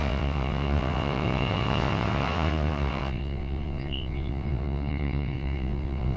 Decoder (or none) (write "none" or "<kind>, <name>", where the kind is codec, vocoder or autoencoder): vocoder, WaveNeXt